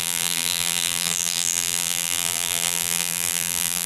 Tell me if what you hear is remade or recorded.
remade